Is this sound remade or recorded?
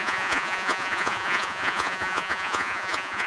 remade